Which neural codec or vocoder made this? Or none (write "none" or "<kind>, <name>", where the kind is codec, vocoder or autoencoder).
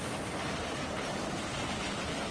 vocoder, BigVGAN v2